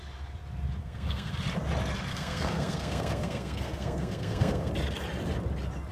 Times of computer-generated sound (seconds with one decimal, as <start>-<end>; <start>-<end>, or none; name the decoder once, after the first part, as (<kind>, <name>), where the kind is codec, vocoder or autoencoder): 0.8-1.3 (codec, SNAC); 2.1-4.7